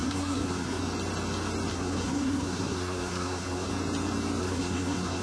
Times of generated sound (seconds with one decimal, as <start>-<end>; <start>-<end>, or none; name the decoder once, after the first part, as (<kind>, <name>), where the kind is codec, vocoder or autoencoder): 0.0-0.8 (codec, SNAC); 1.7-3.7; 4.4-5.2